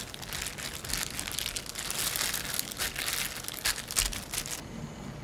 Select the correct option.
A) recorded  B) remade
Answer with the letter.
A